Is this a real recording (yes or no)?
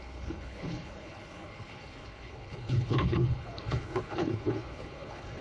no